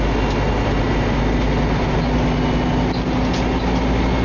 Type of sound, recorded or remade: recorded